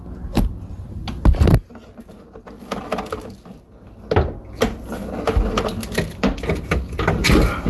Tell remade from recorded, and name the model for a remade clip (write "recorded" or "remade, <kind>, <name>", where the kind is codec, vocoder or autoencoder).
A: recorded